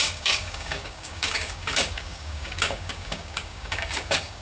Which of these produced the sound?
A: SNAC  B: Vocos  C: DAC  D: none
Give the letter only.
C